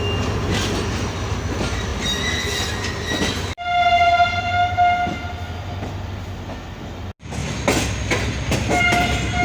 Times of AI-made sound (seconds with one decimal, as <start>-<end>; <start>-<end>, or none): none

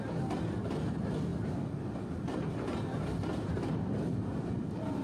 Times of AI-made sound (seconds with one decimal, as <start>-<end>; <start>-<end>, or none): none

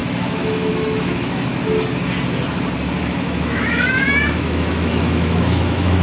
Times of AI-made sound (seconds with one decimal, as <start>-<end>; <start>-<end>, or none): 0.0-1.5; 3.0-6.0

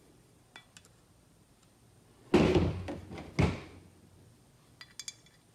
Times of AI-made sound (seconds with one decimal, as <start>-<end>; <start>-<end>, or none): none

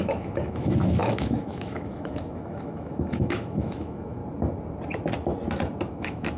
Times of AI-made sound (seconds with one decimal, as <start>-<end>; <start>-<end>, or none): 0.0-4.2; 5.9-6.4

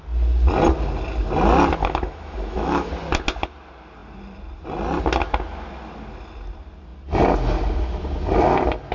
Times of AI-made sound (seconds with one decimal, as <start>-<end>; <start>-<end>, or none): 1.8-2.9